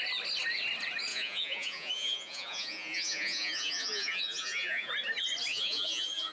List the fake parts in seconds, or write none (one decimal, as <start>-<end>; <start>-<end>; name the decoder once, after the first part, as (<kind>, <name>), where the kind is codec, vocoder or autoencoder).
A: 1.1-4.9 (vocoder, Vocos); 5.5-6.3